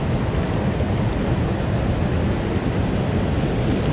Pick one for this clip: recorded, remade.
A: recorded